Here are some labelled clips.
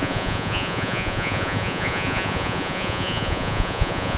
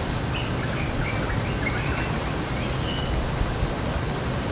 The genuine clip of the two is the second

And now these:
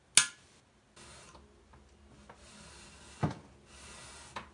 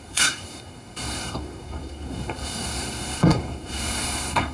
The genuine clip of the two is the first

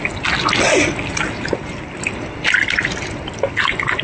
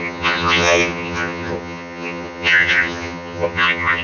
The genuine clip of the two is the first